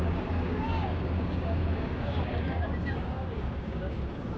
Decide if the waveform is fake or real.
fake